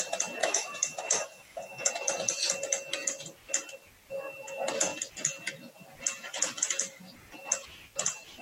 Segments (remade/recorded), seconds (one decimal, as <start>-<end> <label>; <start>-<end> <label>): 0.0-0.4 recorded; 0.4-1.9 remade; 1.9-8.4 recorded